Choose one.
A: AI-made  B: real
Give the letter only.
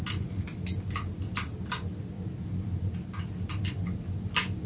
B